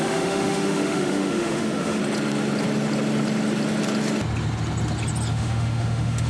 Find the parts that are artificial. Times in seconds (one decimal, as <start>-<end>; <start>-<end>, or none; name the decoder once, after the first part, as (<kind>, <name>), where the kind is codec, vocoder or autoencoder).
0.0-2.0 (autoencoder, DAC-VAE); 5.3-6.3